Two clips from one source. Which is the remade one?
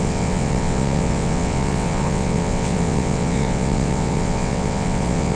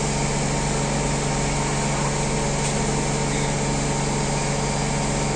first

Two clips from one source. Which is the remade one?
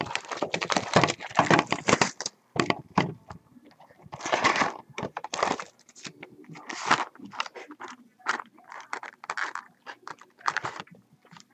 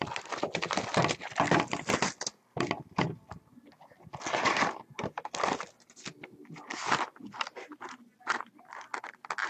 first